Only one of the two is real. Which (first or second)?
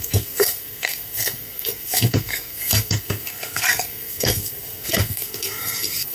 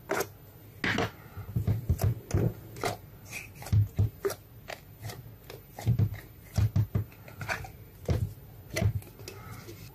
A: second